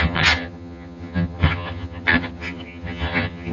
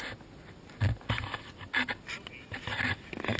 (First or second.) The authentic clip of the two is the second